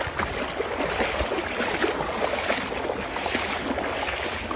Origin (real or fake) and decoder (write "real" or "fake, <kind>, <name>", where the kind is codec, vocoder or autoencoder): real